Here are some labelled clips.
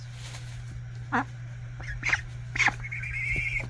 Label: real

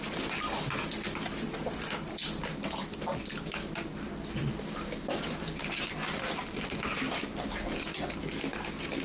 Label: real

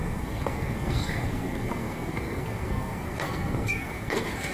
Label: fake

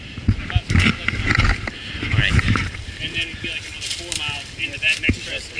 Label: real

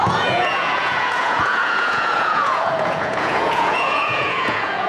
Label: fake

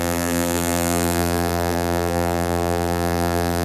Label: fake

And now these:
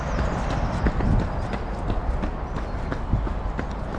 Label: real